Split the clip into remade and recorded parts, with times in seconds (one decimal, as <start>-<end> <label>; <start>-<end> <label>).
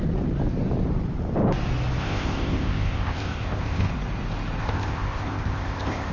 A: 0.0-2.0 recorded; 2.0-3.9 remade; 3.9-4.6 recorded; 4.6-6.1 remade